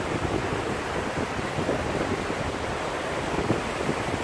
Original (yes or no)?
yes